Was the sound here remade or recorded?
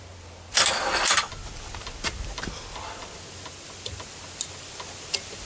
recorded